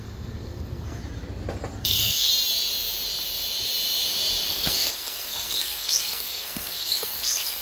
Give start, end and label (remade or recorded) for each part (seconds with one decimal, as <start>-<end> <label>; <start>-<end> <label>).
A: 0.0-1.0 remade; 1.0-1.8 recorded; 1.8-2.3 remade; 2.3-4.5 recorded; 4.5-7.6 remade